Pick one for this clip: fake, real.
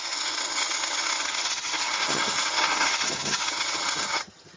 fake